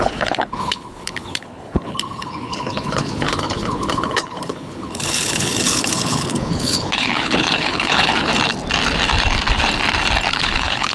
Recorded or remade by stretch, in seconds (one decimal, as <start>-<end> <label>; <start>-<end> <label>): 0.0-8.3 remade; 8.3-10.3 recorded; 10.3-10.9 remade